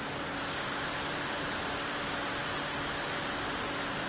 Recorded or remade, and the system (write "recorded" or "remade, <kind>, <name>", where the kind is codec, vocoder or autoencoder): recorded